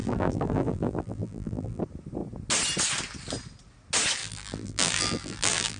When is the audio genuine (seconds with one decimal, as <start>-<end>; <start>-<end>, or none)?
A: 1.8-4.2